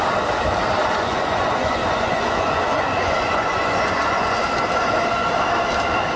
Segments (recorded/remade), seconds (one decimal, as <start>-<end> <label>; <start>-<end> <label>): 0.0-0.8 recorded; 0.8-4.5 remade; 4.5-6.2 recorded